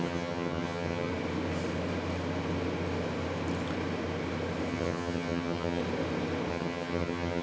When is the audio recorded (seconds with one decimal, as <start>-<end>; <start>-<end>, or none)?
1.1-4.7; 5.8-6.5